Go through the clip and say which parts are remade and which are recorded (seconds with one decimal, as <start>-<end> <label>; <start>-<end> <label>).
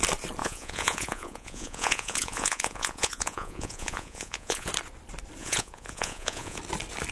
0.0-0.4 recorded; 0.4-4.7 remade; 4.7-5.4 recorded; 5.4-6.6 remade; 6.6-7.1 recorded